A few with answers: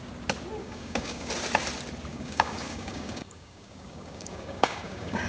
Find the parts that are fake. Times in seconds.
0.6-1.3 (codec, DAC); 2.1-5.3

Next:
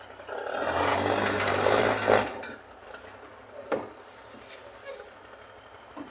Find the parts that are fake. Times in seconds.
0.9-1.8 (codec, DAC)

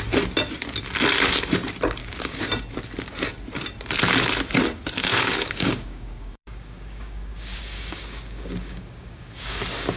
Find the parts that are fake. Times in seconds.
2.0-2.5 (codec, DAC); 5.0-9.6

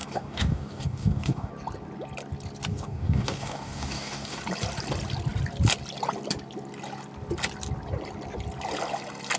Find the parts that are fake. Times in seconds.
0.0-1.5 (codec, DAC); 2.7-4.4

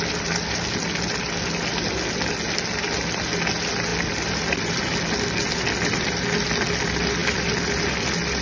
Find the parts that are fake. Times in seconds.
none

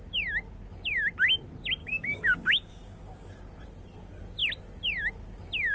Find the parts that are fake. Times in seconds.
1.8-3.3 (codec, DAC)